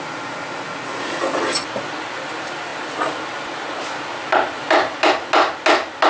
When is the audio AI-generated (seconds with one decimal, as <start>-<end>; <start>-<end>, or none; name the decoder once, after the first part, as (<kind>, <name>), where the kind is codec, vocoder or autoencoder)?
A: none